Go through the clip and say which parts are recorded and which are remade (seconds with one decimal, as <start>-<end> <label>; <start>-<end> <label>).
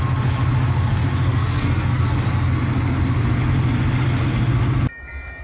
0.0-1.3 recorded; 1.3-2.0 remade; 2.0-5.4 recorded